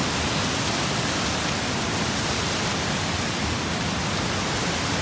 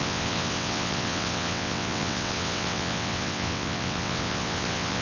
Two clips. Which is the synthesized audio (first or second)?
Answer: second